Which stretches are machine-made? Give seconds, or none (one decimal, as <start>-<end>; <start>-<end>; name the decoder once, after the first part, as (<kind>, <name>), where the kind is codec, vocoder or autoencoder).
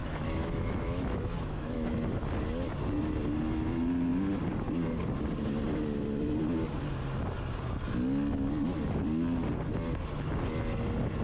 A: 0.0-2.0 (autoencoder, DAC-VAE)